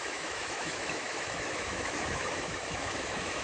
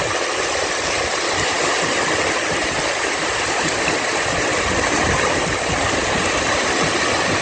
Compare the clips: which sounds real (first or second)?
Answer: second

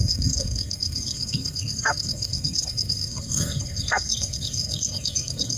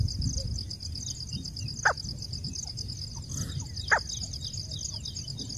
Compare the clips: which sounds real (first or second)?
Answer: second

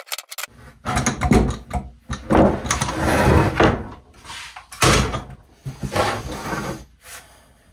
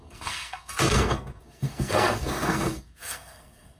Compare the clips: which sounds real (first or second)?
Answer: first